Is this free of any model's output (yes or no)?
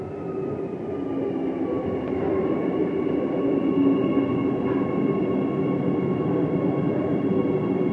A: yes